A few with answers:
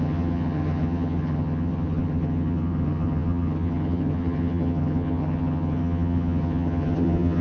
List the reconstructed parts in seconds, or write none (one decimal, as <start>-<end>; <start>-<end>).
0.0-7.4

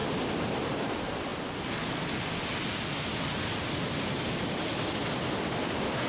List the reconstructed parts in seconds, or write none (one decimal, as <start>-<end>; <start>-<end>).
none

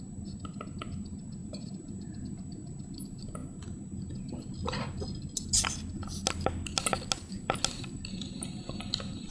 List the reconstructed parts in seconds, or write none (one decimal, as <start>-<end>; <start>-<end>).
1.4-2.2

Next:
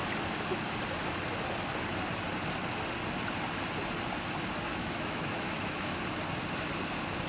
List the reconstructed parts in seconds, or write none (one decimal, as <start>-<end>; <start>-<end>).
4.7-6.0